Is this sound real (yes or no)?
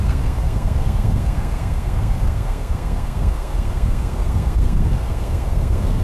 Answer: no